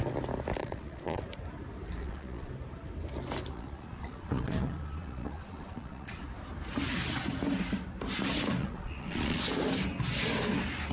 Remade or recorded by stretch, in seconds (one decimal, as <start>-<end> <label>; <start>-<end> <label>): 0.0-0.6 recorded; 0.6-1.2 remade; 1.2-2.0 recorded; 2.0-2.5 remade; 2.5-3.5 recorded; 3.5-6.2 remade; 6.2-8.6 recorded; 8.6-9.4 remade; 9.4-10.9 recorded